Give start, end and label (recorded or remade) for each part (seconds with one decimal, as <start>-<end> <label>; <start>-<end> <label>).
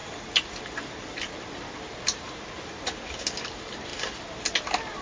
0.0-5.0 recorded